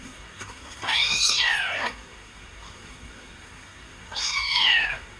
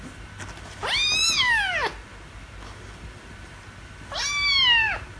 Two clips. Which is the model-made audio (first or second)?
first